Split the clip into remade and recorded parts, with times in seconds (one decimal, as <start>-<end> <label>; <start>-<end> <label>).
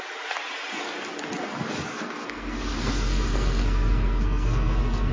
0.0-1.9 recorded; 1.9-5.1 remade